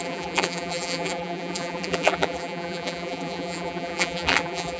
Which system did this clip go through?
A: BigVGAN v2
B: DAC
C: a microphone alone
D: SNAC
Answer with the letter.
A